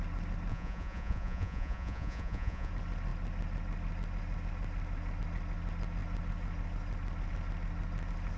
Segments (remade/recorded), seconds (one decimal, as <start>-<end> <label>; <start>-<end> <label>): 0.0-0.5 recorded; 0.5-2.7 remade; 2.7-8.4 recorded